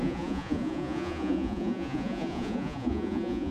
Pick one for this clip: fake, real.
fake